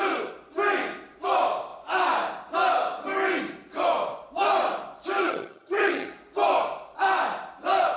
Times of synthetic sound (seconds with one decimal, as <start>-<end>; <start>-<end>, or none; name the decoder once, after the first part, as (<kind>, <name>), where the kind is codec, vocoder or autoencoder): 5.2-6.1 (vocoder, HiFi-GAN)